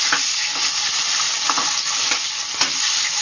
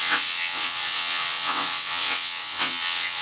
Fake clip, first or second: second